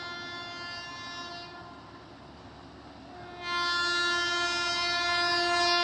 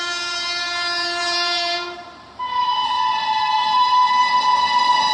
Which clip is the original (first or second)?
first